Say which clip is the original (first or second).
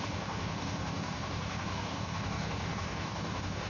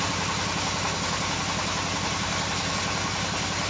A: second